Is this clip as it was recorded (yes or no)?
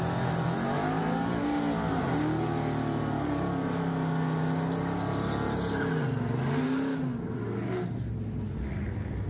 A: yes